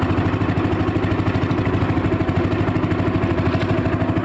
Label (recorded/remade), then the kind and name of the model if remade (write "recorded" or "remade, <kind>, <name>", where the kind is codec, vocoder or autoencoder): recorded